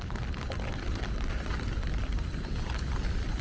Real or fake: real